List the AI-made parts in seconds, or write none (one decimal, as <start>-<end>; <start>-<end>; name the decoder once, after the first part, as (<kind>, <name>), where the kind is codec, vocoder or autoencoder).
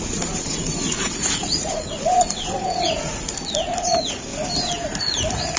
0.0-4.3 (vocoder, Vocos); 5.0-5.6